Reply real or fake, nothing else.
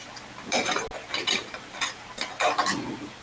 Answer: real